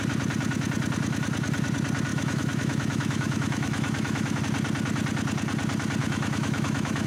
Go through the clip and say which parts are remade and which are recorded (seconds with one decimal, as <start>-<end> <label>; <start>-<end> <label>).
0.0-2.1 recorded; 2.1-4.4 remade; 4.4-6.0 recorded; 6.0-7.1 remade